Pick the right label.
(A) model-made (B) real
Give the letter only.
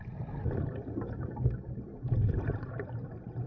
A